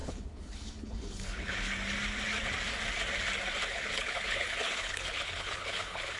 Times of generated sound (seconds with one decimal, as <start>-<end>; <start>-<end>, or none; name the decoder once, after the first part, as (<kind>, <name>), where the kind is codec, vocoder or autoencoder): 0.0-1.7 (codec, HILCodec); 3.7-6.2